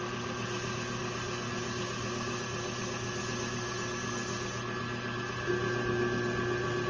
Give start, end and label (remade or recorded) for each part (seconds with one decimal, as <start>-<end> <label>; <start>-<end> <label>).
0.0-6.9 recorded